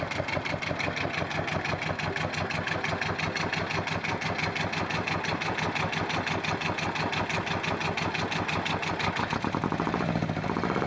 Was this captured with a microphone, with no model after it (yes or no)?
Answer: yes